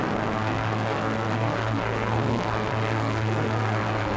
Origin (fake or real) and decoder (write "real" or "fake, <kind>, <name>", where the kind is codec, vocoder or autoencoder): fake, codec, SNAC